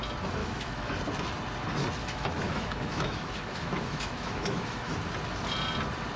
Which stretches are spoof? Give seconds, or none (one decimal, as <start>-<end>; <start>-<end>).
0.4-1.0; 2.0-4.9